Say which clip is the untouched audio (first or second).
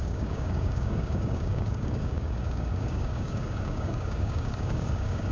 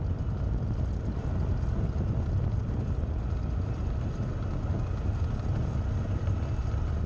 second